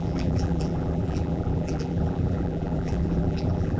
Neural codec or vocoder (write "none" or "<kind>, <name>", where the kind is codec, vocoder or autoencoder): vocoder, BigVGAN v2